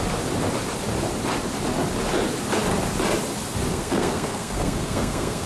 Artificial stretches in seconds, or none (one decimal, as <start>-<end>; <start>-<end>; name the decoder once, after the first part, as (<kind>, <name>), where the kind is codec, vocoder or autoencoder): 3.7-5.5 (codec, SNAC)